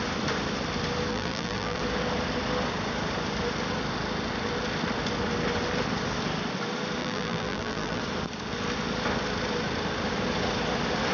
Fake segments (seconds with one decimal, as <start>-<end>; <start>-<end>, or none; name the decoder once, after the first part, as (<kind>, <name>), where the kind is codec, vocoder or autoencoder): 1.1-1.8 (vocoder, BigVGAN v2); 7.0-8.0